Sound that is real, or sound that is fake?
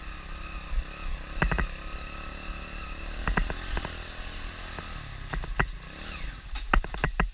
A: real